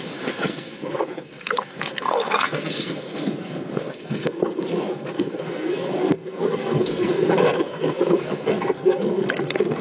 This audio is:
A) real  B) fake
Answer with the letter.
B